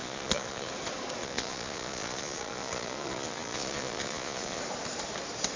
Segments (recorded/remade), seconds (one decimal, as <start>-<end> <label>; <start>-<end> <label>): 0.0-0.7 remade; 0.7-1.2 recorded; 1.2-4.6 remade; 4.6-5.6 recorded